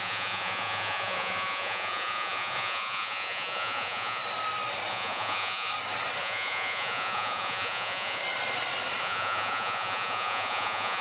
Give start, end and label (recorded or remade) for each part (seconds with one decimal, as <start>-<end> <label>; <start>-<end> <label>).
0.0-4.2 remade; 4.2-4.9 recorded; 4.9-5.7 remade; 5.7-6.2 recorded; 6.2-8.2 remade; 8.2-9.0 recorded; 9.0-11.0 remade